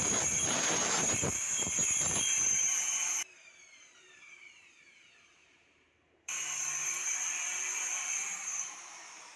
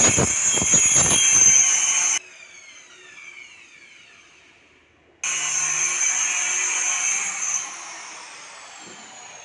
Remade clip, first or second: first